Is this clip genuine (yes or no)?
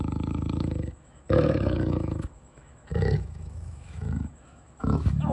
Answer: no